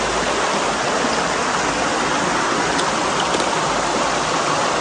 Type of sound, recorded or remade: recorded